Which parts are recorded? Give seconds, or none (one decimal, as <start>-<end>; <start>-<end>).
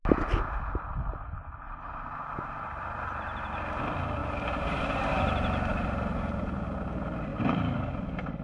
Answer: 0.0-4.2; 5.2-5.7; 6.7-7.3; 7.9-8.4